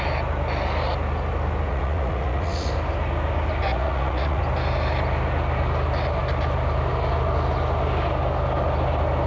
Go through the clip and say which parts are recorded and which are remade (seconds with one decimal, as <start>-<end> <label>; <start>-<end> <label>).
0.0-1.7 recorded; 1.7-2.7 remade; 2.7-3.7 recorded; 3.7-4.4 remade; 4.4-9.3 recorded